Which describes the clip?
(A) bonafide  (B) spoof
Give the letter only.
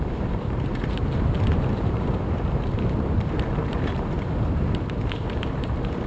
B